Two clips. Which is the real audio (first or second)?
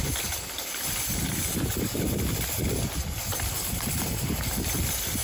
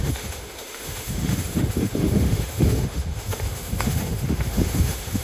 first